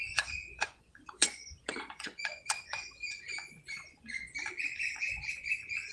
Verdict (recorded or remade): remade